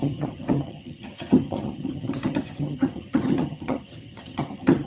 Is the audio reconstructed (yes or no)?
yes